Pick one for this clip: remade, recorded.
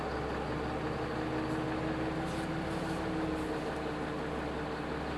recorded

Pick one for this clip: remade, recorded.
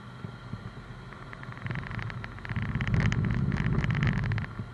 recorded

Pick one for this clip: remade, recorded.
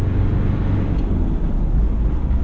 recorded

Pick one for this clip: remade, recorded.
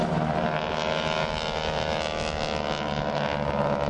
recorded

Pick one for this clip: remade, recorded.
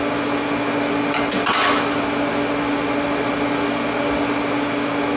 recorded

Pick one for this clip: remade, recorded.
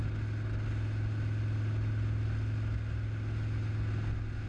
recorded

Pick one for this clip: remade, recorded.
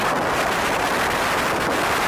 recorded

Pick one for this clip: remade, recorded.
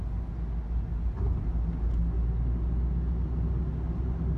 recorded